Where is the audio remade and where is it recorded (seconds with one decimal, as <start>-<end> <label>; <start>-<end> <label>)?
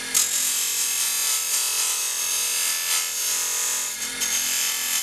0.0-5.0 recorded